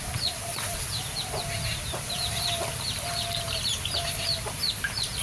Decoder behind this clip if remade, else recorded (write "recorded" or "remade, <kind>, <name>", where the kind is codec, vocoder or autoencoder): recorded